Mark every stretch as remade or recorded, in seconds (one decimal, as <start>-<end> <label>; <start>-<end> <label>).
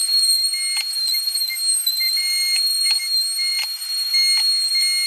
0.0-0.5 remade; 0.5-1.7 recorded; 1.7-2.8 remade; 2.8-3.5 recorded; 3.5-4.1 remade; 4.1-5.1 recorded